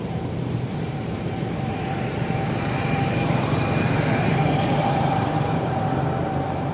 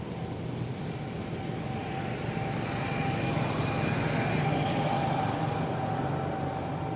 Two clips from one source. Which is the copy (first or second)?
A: first